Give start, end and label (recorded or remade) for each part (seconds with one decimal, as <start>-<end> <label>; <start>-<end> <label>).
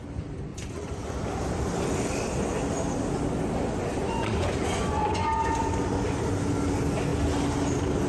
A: 0.0-0.5 recorded; 0.5-1.2 remade; 1.2-3.9 recorded; 3.9-5.7 remade; 5.7-8.1 recorded